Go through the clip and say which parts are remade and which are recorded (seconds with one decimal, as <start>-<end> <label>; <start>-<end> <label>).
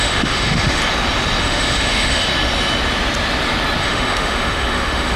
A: 0.0-0.8 remade; 0.8-1.4 recorded; 1.4-2.3 remade; 2.3-3.8 recorded; 3.8-5.2 remade